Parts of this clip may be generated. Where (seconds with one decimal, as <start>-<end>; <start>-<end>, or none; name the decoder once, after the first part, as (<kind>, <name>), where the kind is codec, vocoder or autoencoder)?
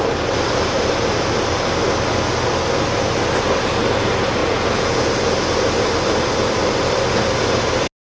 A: 4.4-5.0 (vocoder, Vocos)